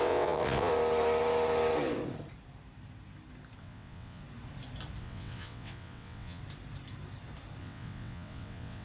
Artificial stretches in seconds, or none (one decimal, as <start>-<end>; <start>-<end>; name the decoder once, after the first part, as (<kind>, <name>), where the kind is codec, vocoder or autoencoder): 0.0-0.7 (vocoder, WaveNeXt); 3.6-4.2; 5.0-6.4; 7.6-8.8